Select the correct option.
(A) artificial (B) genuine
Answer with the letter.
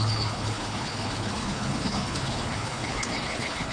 A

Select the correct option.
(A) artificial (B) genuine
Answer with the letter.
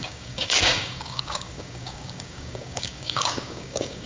A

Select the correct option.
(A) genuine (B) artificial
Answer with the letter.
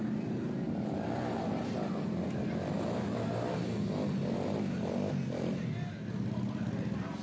A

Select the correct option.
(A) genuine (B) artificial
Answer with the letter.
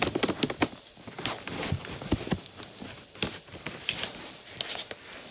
A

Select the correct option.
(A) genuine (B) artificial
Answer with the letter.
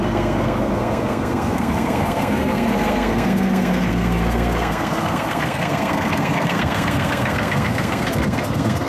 B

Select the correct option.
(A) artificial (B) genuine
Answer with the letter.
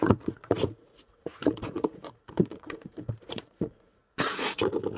A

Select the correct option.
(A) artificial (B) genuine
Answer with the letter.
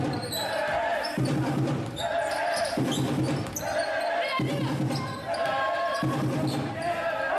B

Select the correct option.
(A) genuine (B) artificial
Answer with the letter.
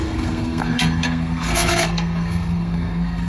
B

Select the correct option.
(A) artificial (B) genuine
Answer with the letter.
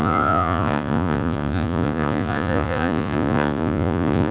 A